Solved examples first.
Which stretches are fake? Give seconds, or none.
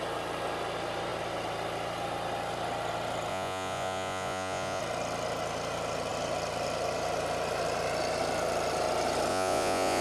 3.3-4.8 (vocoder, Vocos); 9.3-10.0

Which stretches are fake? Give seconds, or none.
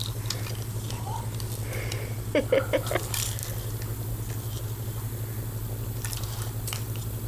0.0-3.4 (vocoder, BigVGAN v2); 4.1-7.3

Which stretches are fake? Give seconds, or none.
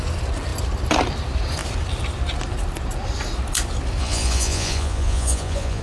4.0-5.8 (vocoder, Vocos)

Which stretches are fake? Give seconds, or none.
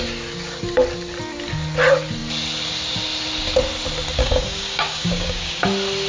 4.2-5.6 (codec, DAC)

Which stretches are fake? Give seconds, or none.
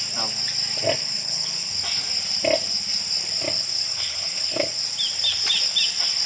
1.0-1.7 (codec, HILCodec); 3.9-4.7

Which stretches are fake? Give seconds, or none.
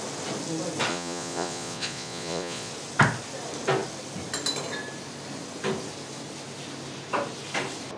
0.9-2.7 (vocoder, Vocos)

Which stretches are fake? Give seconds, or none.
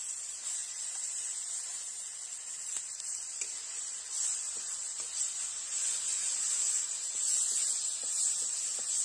none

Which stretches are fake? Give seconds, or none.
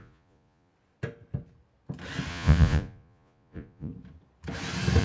0.0-0.7 (vocoder, Vocos); 2.3-3.9